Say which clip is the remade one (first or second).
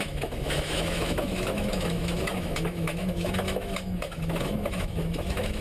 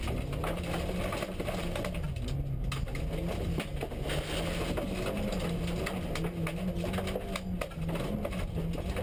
first